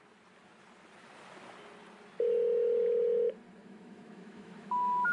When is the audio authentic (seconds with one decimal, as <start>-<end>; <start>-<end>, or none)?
0.0-3.6